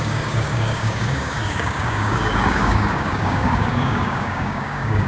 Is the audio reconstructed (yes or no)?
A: yes